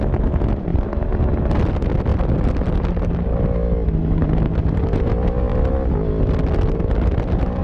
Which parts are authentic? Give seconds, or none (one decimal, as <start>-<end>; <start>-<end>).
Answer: 0.0-0.7; 1.3-2.1; 3.0-7.6